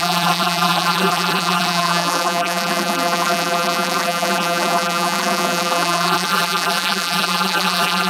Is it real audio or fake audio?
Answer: fake